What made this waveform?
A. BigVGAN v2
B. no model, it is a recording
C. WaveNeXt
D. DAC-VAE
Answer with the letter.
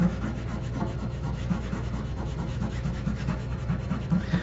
D